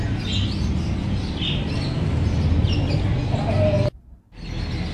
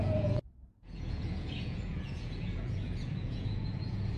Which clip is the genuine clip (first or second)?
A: first